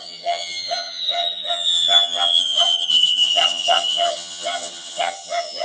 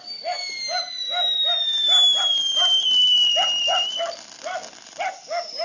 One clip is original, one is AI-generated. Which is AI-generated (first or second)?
first